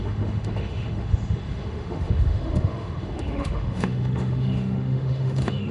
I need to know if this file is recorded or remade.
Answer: remade